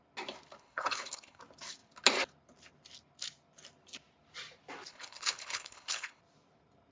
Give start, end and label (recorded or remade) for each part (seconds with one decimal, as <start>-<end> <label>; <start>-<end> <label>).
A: 0.0-0.6 recorded; 0.6-1.4 remade; 1.4-4.9 recorded; 4.9-6.2 remade; 6.2-6.9 recorded